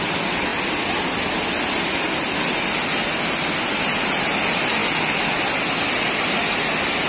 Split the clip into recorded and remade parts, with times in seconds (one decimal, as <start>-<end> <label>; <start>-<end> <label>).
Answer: 0.0-7.1 recorded